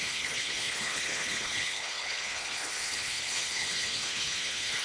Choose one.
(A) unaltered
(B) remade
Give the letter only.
B